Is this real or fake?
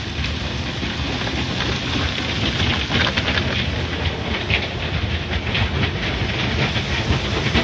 real